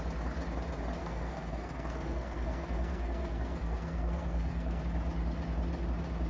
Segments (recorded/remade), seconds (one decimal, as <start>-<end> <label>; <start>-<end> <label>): 0.0-1.0 recorded; 1.0-4.8 remade; 4.8-6.3 recorded

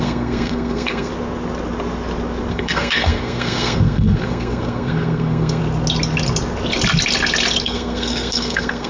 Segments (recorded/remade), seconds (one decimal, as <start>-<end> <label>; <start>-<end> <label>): 0.0-1.1 remade; 1.1-2.5 recorded; 2.5-5.6 remade; 5.6-7.6 recorded; 7.6-8.9 remade